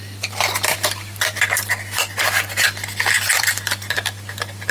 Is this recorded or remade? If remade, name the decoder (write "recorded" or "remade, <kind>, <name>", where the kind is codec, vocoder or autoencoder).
remade, vocoder, BigVGAN v2